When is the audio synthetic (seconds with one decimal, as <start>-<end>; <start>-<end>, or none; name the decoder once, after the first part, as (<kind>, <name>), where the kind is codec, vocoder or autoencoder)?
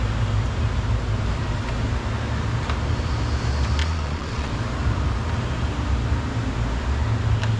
3.8-4.5 (vocoder, Vocos)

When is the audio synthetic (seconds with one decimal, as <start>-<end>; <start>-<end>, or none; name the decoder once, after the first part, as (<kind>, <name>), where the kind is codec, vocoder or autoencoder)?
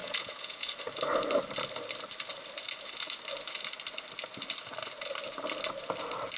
0.0-0.7 (vocoder, Vocos)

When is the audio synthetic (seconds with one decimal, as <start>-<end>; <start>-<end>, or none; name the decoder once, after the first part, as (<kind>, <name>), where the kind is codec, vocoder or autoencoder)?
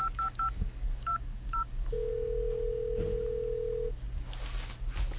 0.0-2.1 (codec, DAC)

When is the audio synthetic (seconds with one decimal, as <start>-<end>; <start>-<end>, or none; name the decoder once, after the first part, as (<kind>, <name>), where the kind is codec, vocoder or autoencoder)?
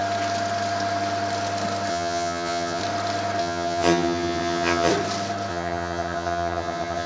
1.9-2.8 (vocoder, HiFi-GAN); 3.4-4.9; 5.5-7.1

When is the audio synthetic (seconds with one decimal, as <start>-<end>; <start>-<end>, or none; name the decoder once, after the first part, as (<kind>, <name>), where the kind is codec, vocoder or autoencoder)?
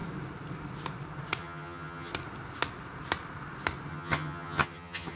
1.4-2.1 (vocoder, HiFi-GAN); 3.9-5.2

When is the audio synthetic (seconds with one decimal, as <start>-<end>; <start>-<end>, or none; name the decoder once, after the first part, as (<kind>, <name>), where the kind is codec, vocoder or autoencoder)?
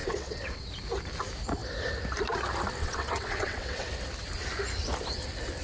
0.0-0.7 (vocoder, WaveNeXt); 2.8-4.0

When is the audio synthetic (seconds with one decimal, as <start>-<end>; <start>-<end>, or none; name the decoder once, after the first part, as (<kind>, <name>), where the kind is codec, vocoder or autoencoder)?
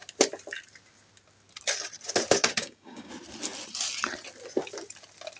2.6-3.1 (codec, DAC)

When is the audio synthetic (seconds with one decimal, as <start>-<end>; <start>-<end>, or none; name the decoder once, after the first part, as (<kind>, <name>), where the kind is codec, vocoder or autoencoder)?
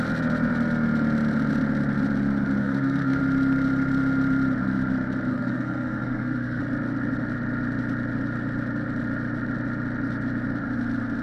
2.6-3.2 (codec, SNAC); 5.3-6.6